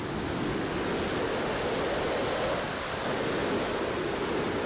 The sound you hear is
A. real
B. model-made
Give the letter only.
A